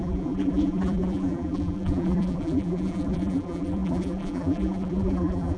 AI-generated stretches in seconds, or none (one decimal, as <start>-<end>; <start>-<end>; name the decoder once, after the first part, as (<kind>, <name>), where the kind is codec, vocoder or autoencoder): 0.0-5.6 (vocoder, BigVGAN v2)